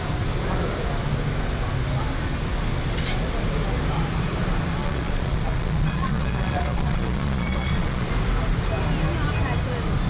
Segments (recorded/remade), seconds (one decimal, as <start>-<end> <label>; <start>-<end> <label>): 0.0-4.8 recorded; 4.8-8.1 remade; 8.1-10.1 recorded